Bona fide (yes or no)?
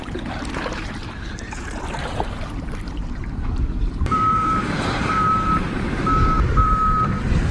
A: no